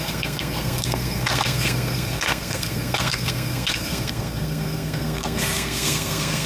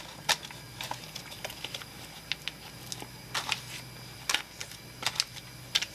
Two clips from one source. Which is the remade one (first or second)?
first